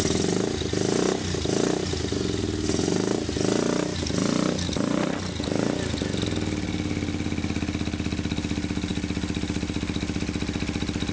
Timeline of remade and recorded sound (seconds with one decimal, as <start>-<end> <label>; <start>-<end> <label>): 0.0-11.1 recorded